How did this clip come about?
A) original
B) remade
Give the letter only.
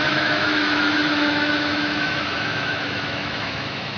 B